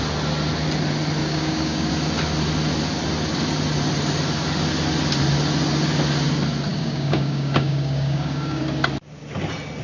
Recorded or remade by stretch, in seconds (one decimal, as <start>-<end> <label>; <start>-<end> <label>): 0.0-1.2 recorded; 1.2-1.9 remade; 1.9-6.7 recorded; 6.7-8.6 remade; 8.6-9.8 recorded